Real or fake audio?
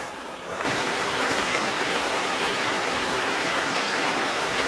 fake